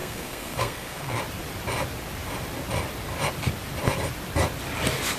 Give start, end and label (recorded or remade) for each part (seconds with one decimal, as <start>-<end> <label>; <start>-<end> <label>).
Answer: 0.0-1.2 remade; 1.2-5.2 recorded